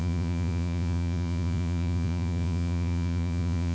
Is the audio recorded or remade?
remade